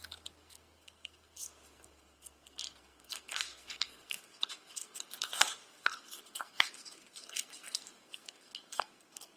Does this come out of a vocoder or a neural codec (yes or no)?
yes